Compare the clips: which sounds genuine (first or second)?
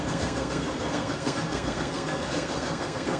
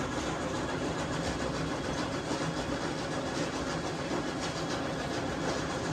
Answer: second